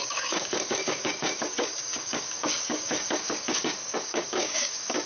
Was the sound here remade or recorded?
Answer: remade